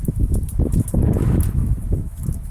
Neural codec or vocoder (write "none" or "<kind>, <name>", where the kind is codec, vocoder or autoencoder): autoencoder, DAC-VAE